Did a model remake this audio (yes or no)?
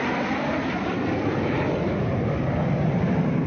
yes